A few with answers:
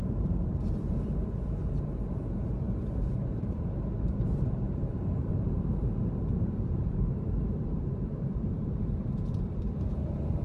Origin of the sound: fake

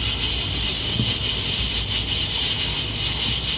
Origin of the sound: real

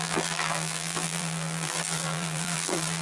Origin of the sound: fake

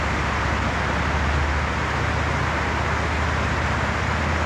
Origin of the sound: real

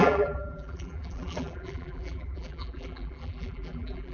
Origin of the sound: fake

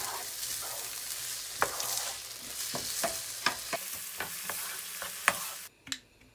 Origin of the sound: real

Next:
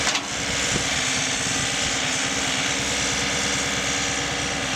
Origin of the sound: real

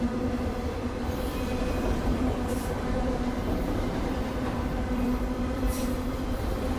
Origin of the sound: fake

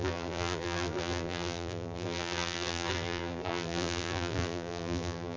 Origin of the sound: fake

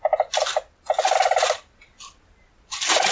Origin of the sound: real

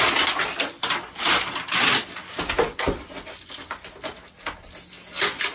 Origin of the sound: real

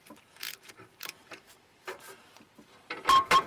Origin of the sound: fake